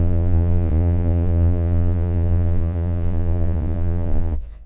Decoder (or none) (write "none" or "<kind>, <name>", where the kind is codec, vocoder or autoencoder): vocoder, Vocos